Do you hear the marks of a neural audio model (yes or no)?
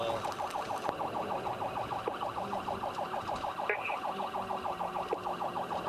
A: no